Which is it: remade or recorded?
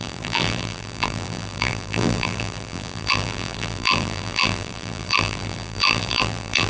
remade